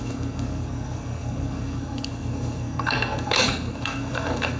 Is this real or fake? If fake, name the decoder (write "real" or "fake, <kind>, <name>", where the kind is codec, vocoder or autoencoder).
fake, codec, SNAC